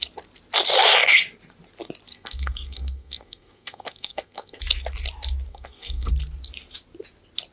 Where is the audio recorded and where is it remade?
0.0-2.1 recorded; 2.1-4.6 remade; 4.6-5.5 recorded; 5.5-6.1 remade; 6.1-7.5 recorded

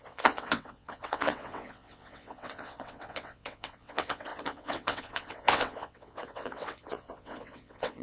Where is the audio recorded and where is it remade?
0.0-8.0 remade

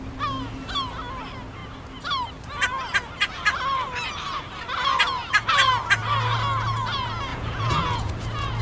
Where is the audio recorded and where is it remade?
0.0-7.3 recorded; 7.3-8.1 remade; 8.1-8.6 recorded

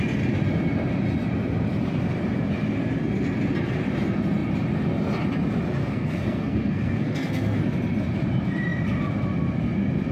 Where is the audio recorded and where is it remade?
0.0-5.8 recorded; 5.8-7.6 remade; 7.6-10.1 recorded

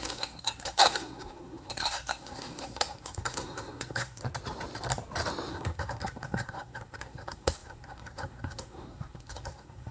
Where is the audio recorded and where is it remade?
0.0-4.2 remade; 4.2-5.5 recorded; 5.5-9.9 remade